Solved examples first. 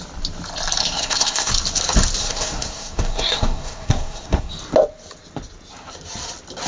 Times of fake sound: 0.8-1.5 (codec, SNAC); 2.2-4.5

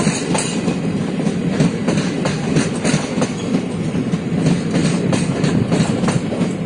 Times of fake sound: none

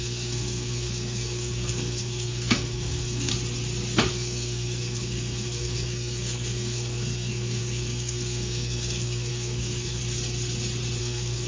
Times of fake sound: 0.0-3.3 (codec, SNAC); 4.1-10.0; 11.0-11.5

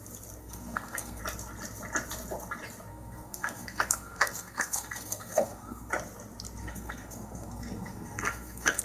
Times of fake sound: 0.4-1.2 (codec, SNAC); 2.9-5.9; 6.6-8.8

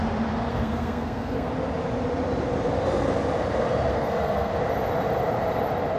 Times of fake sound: 0.5-1.5 (codec, SNAC); 3.9-4.5